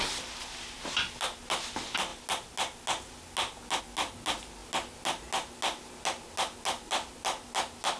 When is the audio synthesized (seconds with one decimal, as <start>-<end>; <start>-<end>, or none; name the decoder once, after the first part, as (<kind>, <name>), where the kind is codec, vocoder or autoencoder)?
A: none